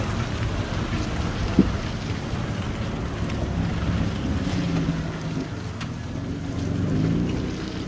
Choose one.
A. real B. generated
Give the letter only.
A